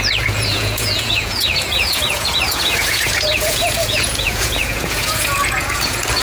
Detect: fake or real fake